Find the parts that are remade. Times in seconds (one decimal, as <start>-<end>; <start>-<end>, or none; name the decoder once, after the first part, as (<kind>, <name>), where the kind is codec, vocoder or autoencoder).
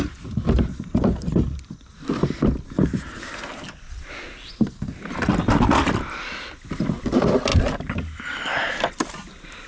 none